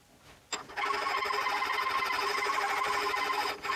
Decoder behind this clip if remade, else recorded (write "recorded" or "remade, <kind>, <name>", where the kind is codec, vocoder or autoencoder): recorded